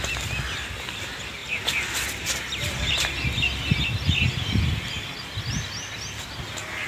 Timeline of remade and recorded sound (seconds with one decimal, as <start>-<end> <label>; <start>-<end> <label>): 0.0-6.9 recorded